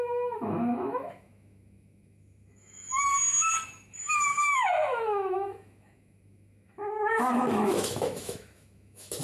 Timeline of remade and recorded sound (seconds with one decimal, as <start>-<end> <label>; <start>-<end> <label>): 0.0-3.1 remade; 3.1-4.1 recorded; 4.1-9.2 remade